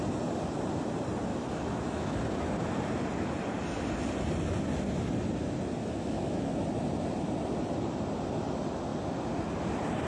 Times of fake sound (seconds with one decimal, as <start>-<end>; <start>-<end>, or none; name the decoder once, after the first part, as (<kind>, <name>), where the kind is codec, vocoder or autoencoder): 1.3-2.2 (autoencoder, DAC-VAE); 5.8-6.5